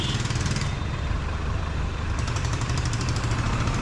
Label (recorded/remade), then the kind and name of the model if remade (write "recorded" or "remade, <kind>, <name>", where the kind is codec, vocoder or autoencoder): remade, vocoder, BigVGAN v2